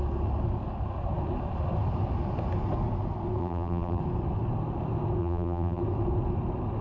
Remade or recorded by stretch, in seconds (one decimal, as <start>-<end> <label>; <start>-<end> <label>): 0.0-3.4 recorded; 3.4-4.0 remade; 4.0-5.2 recorded; 5.2-5.8 remade; 5.8-6.8 recorded